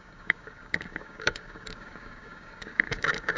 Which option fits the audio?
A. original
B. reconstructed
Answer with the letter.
B